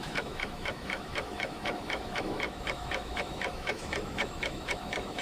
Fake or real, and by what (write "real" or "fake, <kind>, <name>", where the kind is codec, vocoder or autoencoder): fake, autoencoder, DAC-VAE